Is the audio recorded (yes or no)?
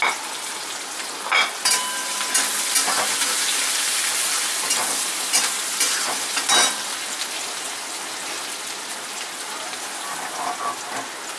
yes